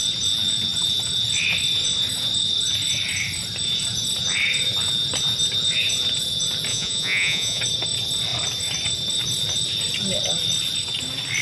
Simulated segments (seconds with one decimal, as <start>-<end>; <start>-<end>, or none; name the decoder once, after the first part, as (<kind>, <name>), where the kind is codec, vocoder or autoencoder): 6.7-7.6 (vocoder, Vocos)